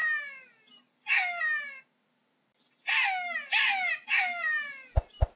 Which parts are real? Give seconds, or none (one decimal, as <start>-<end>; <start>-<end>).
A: 0.0-5.4